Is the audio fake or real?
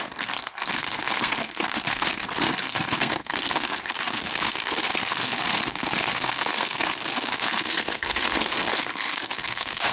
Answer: fake